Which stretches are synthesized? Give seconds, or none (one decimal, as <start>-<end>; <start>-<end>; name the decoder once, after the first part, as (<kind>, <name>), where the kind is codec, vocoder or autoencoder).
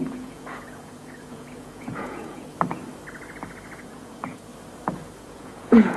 0.0-2.5 (vocoder, Vocos); 3.8-4.5; 5.2-6.0